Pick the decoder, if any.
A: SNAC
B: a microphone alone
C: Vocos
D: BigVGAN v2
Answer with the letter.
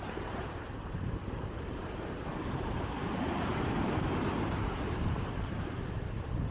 D